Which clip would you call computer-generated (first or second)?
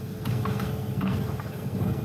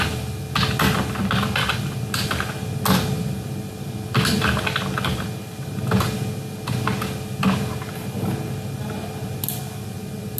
first